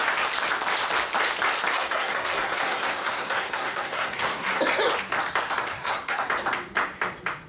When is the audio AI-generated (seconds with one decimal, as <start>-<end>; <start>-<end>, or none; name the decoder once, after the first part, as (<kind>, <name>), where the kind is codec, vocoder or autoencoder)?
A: 1.7-4.6 (codec, SNAC); 5.7-6.3